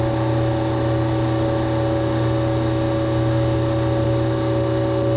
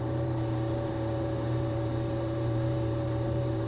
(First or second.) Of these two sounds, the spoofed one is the second